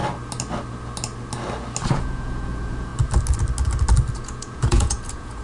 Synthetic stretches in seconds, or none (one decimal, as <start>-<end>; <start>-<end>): 1.9-2.9; 4.1-5.4